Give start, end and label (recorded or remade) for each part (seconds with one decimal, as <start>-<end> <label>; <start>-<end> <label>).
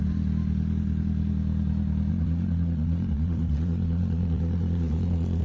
0.0-2.1 recorded; 2.1-5.4 remade